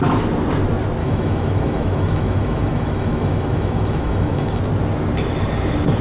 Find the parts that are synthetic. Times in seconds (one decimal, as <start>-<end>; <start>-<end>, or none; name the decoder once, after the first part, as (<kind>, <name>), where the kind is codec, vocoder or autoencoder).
1.0-4.6 (autoencoder, DAC-VAE)